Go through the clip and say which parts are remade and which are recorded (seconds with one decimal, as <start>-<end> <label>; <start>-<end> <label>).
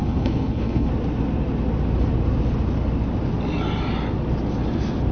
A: 0.0-0.9 remade; 0.9-5.1 recorded